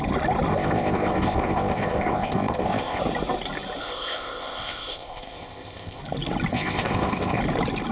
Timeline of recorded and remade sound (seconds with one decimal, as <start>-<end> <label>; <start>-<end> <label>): 0.0-0.5 recorded; 0.5-3.0 remade; 3.0-3.8 recorded; 3.8-6.0 remade; 6.0-6.5 recorded; 6.5-7.4 remade; 7.4-7.9 recorded

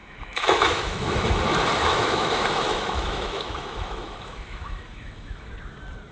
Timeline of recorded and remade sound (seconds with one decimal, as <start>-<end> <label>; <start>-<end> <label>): 0.0-1.3 remade; 1.3-1.8 recorded; 1.8-5.5 remade; 5.5-6.1 recorded

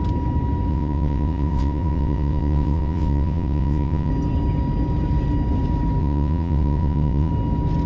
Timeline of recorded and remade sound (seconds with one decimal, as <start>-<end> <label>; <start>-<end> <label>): 0.0-0.7 recorded; 0.7-4.1 remade; 4.1-6.0 recorded; 6.0-7.3 remade; 7.3-7.9 recorded

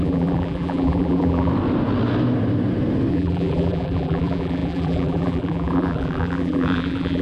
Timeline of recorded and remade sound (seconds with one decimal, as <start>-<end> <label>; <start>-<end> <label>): 0.0-1.5 remade; 1.5-3.1 recorded; 3.1-7.2 remade

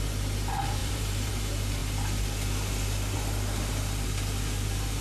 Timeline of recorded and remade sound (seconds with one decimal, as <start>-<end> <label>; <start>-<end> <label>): 0.0-0.8 recorded; 0.8-1.3 remade; 1.3-5.0 recorded